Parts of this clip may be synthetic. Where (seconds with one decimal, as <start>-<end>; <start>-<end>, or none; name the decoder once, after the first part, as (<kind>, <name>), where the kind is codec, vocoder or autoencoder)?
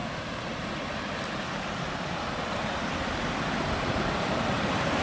none